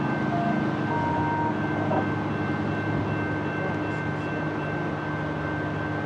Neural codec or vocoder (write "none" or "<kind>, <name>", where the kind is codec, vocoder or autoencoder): none